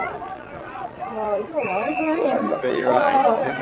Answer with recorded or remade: remade